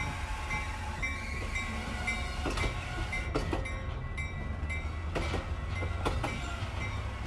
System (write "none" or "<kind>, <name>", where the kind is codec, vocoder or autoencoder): none